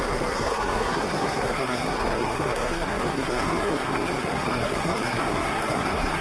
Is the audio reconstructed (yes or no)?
yes